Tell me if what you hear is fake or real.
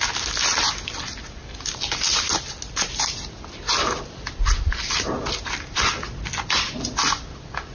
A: real